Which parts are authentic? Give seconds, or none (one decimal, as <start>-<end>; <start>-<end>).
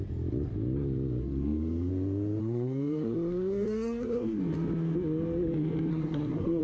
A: 0.0-1.2; 1.9-2.4; 4.4-5.9